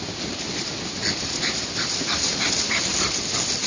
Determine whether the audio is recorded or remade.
recorded